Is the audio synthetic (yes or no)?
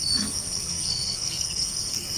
yes